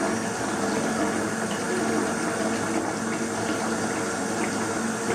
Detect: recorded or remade recorded